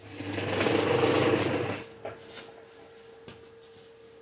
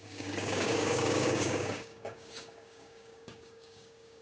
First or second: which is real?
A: first